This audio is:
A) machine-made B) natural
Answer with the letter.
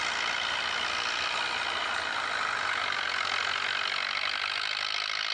B